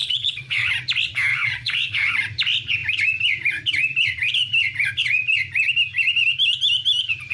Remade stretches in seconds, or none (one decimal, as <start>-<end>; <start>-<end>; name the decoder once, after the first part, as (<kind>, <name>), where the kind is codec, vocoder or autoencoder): 0.0-0.7 (vocoder, Vocos); 1.3-2.1